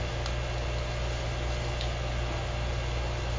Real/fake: real